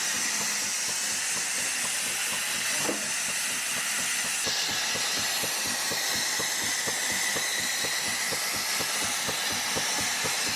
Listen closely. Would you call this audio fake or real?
real